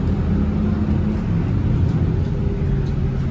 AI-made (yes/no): no